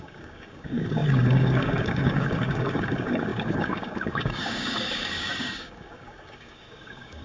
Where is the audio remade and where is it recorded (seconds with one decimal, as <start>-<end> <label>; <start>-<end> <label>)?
0.0-7.2 remade